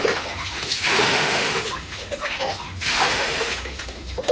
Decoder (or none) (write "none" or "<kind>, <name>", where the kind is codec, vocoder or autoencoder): autoencoder, DAC-VAE